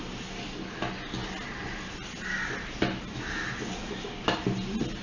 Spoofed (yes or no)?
no